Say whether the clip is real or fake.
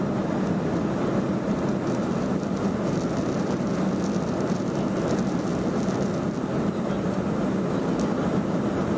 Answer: real